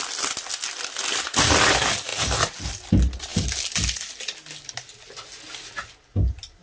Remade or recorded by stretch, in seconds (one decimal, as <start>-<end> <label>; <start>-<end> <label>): 0.0-2.1 recorded; 2.1-2.9 remade; 2.9-6.6 recorded